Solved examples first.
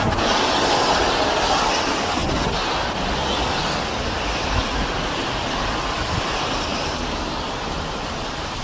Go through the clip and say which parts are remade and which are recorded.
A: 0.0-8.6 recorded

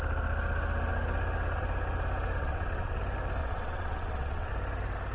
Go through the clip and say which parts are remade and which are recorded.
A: 0.0-2.4 recorded; 2.4-3.0 remade; 3.0-3.4 recorded; 3.4-4.5 remade; 4.5-5.1 recorded

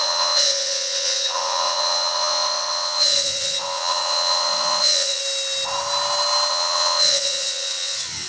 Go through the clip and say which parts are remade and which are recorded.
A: 0.0-5.2 remade; 5.2-6.5 recorded; 6.5-8.3 remade

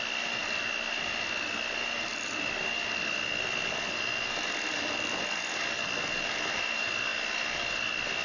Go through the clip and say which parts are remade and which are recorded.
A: 0.0-8.2 recorded